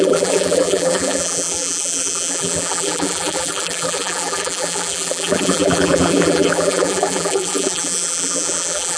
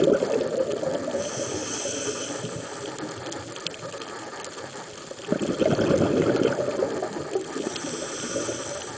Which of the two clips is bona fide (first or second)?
second